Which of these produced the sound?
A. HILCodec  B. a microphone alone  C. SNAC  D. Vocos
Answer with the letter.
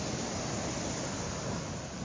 B